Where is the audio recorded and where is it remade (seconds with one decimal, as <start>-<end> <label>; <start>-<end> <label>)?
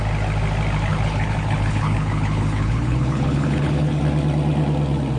0.0-0.9 recorded; 0.9-4.0 remade; 4.0-5.2 recorded